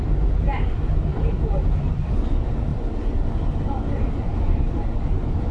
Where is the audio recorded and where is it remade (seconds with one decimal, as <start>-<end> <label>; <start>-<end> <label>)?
0.0-2.7 remade; 2.7-5.0 recorded; 5.0-5.5 remade

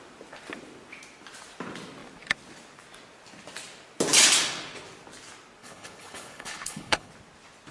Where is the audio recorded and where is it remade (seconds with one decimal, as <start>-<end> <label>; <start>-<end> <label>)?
0.0-5.6 recorded; 5.6-7.1 remade; 7.1-7.7 recorded

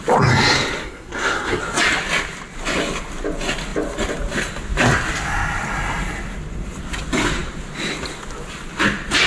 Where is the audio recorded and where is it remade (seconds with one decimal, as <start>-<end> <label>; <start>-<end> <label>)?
0.0-0.8 recorded; 0.8-1.6 remade; 1.6-9.3 recorded

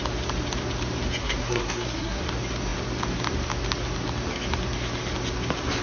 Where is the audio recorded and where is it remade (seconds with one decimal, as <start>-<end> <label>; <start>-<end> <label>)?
0.0-1.2 recorded; 1.2-2.2 remade; 2.2-5.8 recorded

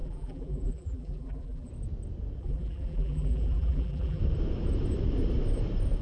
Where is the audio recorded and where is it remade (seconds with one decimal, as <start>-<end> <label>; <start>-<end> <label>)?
0.0-1.7 remade; 1.7-2.4 recorded; 2.4-4.2 remade; 4.2-6.0 recorded

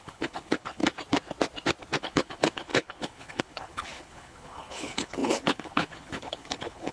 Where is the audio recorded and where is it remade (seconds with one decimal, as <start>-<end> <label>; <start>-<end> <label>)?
0.0-0.8 remade; 0.8-2.0 recorded; 2.0-6.9 remade

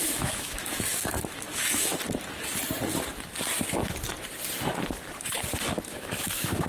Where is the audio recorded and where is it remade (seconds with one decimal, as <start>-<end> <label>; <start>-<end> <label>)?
0.0-1.9 remade; 1.9-5.9 recorded; 5.9-6.7 remade

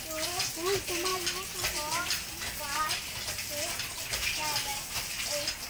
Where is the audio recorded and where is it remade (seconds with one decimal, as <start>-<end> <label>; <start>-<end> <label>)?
0.0-5.7 recorded